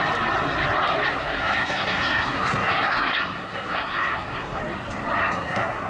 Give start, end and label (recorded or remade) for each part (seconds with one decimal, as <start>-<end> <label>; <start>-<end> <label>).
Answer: 0.0-1.1 recorded; 1.1-4.6 remade; 4.6-5.2 recorded; 5.2-5.9 remade